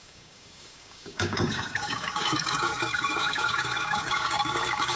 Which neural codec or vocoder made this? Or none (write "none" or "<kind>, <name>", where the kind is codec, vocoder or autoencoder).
codec, DAC